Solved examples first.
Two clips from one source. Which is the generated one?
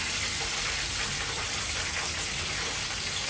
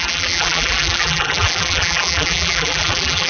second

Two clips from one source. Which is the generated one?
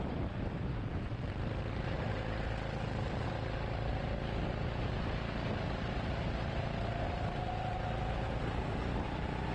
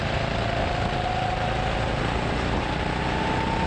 first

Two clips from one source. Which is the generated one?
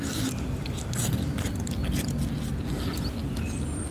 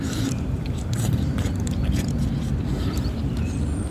second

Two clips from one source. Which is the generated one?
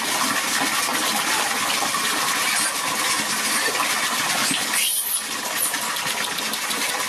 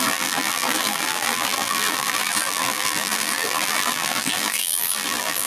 second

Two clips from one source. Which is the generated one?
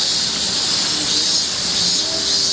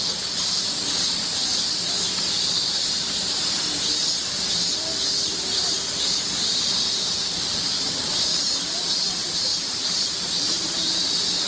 second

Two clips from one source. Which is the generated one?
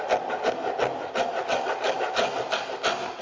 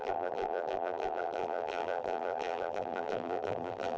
second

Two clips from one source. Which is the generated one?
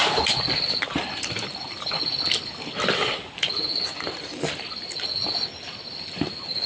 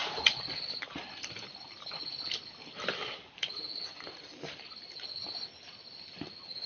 second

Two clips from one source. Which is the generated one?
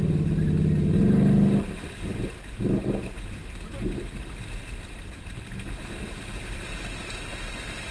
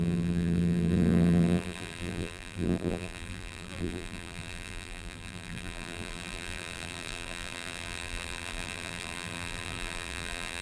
second